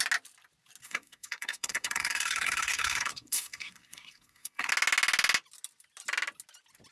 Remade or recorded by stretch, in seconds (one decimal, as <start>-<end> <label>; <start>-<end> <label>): 0.0-0.8 recorded; 0.8-4.7 remade; 4.7-6.9 recorded